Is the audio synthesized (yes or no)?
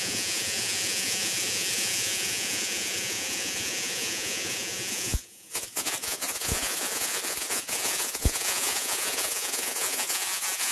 yes